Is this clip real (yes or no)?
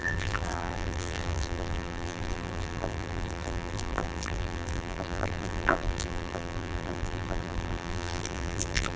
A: no